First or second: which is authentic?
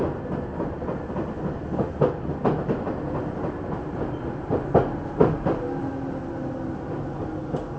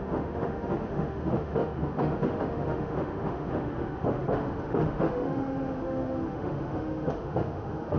first